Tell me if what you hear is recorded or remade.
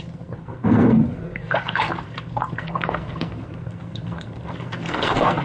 remade